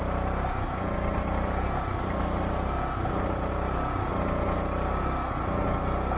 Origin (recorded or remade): recorded